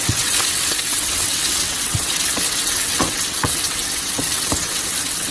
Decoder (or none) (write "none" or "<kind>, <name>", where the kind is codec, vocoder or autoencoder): vocoder, WaveNeXt